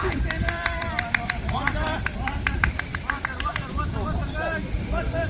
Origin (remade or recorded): remade